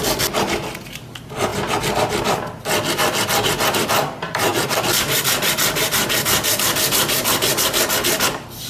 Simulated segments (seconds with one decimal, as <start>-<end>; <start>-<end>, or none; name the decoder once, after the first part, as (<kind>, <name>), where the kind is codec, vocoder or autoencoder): 0.0-1.5 (vocoder, BigVGAN v2); 2.9-8.7